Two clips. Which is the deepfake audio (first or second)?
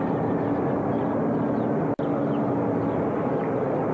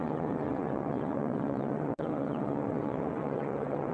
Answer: second